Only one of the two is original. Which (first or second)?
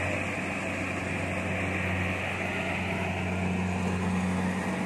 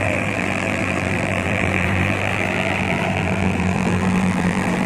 first